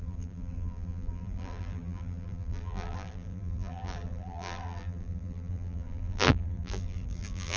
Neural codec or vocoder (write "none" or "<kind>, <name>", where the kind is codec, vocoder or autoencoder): vocoder, BigVGAN v2